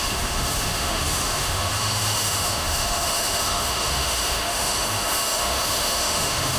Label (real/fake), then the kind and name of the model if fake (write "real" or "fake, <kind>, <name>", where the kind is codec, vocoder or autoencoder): fake, autoencoder, DAC-VAE